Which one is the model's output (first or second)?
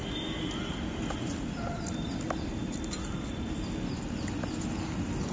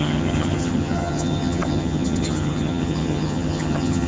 second